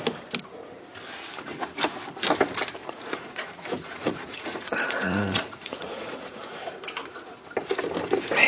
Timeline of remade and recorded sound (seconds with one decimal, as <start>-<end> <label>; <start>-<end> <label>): 0.0-2.8 recorded; 2.8-6.7 remade; 6.7-8.5 recorded

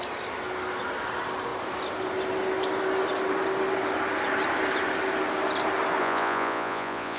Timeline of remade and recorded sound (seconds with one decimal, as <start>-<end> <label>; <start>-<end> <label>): 0.0-6.0 recorded; 6.0-7.2 remade

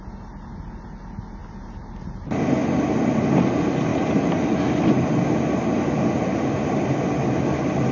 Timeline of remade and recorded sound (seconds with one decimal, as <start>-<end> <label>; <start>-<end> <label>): 0.0-7.9 recorded

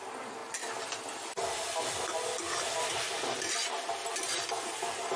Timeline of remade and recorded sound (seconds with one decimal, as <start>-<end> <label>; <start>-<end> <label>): 0.0-5.2 recorded

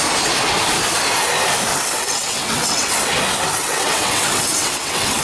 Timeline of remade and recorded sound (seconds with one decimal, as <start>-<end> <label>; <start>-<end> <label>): 0.0-1.7 recorded; 1.7-2.9 remade; 2.9-3.6 recorded; 3.6-5.2 remade

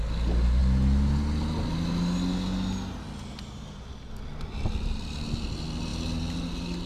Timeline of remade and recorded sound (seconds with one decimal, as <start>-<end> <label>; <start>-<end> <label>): 0.0-6.9 recorded

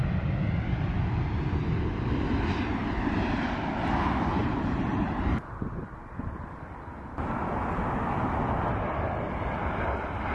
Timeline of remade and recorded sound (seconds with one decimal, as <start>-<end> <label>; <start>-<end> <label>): 0.0-4.4 recorded; 4.4-5.4 remade; 5.4-6.0 recorded; 6.0-6.6 remade; 6.6-10.3 recorded